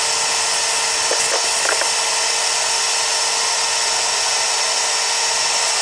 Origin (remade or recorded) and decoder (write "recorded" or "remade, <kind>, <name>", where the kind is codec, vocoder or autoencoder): recorded